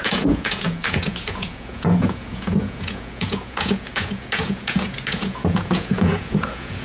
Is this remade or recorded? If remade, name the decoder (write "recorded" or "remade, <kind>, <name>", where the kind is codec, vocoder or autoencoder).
remade, vocoder, Vocos